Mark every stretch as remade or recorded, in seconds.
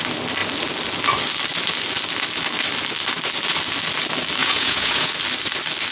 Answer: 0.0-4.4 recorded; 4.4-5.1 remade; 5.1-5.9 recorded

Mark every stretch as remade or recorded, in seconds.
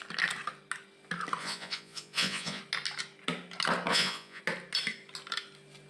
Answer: 0.0-1.4 recorded; 1.4-2.6 remade; 2.6-3.9 recorded; 3.9-4.4 remade; 4.4-5.9 recorded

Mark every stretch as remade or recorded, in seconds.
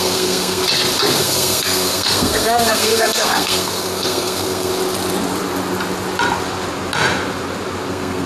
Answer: 0.0-0.6 remade; 0.6-1.2 recorded; 1.2-4.7 remade; 4.7-7.9 recorded; 7.9-8.3 remade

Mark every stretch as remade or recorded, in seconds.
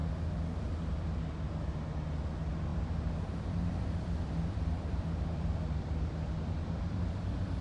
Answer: 0.0-1.5 remade; 1.5-2.7 recorded; 2.7-7.6 remade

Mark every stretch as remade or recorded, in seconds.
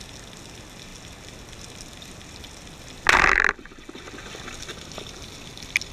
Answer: 0.0-5.9 recorded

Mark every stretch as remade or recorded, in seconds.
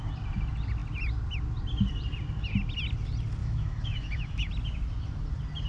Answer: 0.0-3.4 recorded; 3.4-4.5 remade; 4.5-5.7 recorded